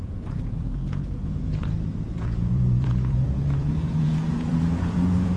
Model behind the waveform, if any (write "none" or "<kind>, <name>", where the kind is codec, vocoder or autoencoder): vocoder, Vocos